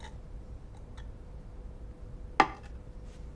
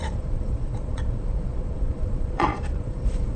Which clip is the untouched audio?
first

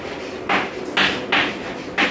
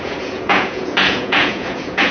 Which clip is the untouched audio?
first